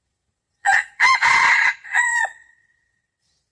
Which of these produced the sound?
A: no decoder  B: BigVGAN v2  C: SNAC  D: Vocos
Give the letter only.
D